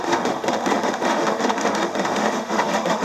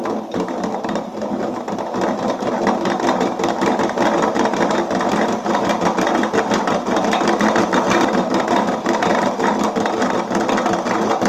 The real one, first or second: second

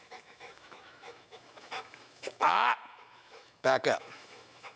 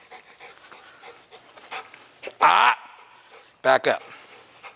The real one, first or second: second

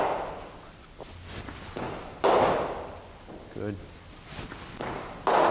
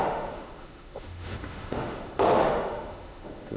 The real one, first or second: first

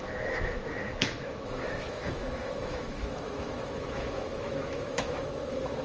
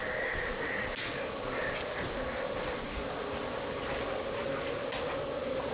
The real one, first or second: second